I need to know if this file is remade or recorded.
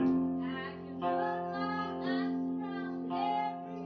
recorded